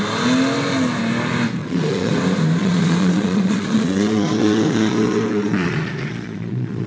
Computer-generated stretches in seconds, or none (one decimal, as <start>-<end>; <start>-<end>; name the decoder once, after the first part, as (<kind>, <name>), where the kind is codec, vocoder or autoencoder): 1.6-2.1 (vocoder, Vocos); 2.6-6.9